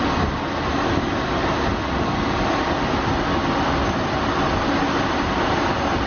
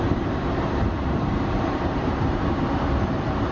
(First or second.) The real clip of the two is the first